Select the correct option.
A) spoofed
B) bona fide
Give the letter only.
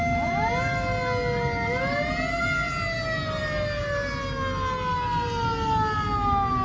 B